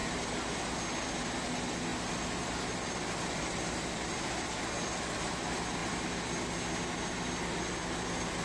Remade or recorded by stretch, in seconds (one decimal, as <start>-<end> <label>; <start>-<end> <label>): 0.0-0.6 remade; 0.6-1.9 recorded; 1.9-4.6 remade; 4.6-5.8 recorded; 5.8-6.5 remade; 6.5-8.4 recorded